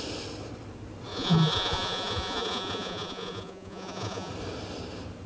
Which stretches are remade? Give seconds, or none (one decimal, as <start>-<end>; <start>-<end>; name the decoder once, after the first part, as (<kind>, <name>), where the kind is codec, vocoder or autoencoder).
1.1-4.3 (vocoder, Vocos)